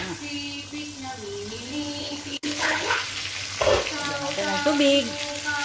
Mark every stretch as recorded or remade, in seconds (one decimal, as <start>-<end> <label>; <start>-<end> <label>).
0.0-2.0 recorded; 2.0-3.0 remade; 3.0-5.6 recorded